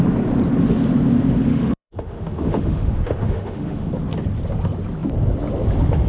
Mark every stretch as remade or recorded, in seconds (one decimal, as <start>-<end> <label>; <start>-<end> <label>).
0.0-1.5 recorded; 1.5-3.9 remade; 3.9-6.1 recorded